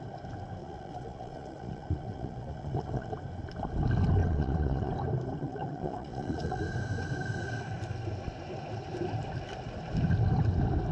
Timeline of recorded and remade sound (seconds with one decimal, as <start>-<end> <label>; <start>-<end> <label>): 0.0-0.6 recorded; 0.6-3.1 remade; 3.1-4.2 recorded; 4.2-4.9 remade; 4.9-5.4 recorded; 5.4-6.6 remade; 6.6-10.9 recorded